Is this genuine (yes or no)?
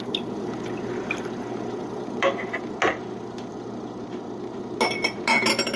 yes